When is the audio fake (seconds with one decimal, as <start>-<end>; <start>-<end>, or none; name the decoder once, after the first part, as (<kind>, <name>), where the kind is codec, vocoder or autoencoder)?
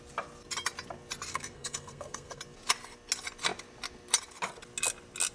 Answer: 1.3-2.4 (codec, SNAC)